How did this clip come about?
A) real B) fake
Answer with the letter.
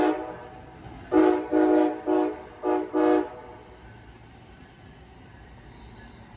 A